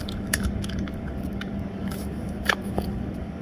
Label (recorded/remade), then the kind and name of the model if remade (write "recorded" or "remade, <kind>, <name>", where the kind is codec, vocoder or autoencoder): remade, codec, DAC